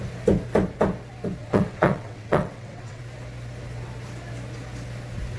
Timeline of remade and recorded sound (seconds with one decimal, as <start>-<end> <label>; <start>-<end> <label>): 0.0-1.4 recorded; 1.4-3.0 remade; 3.0-5.4 recorded